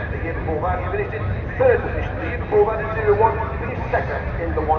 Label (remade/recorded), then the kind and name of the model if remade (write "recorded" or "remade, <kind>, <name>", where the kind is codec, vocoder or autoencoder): recorded